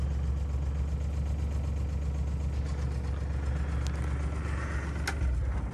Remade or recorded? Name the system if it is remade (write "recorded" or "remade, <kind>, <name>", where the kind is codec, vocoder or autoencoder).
recorded